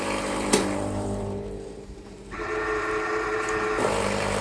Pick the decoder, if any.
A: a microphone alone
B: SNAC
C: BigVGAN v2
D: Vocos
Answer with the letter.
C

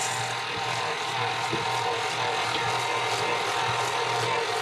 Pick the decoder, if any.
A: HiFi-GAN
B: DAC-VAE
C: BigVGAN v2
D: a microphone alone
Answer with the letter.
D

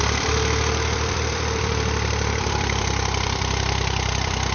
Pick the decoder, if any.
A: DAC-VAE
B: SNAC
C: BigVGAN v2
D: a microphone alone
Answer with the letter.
C